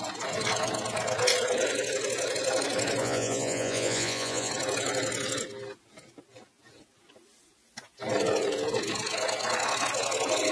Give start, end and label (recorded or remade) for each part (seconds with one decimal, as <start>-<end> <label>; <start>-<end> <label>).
0.0-3.0 recorded; 3.0-4.5 remade; 4.5-10.5 recorded